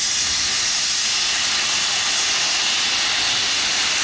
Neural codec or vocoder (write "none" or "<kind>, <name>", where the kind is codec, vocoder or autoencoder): none